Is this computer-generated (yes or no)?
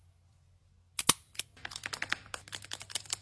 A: no